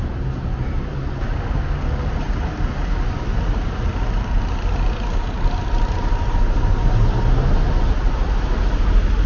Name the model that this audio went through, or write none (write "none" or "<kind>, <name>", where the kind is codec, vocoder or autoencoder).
none